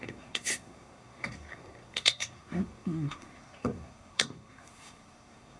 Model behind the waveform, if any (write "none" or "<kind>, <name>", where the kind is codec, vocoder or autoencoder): codec, SNAC